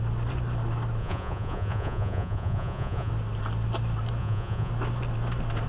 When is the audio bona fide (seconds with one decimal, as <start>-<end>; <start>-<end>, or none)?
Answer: 0.0-1.0; 3.1-4.2; 4.7-5.7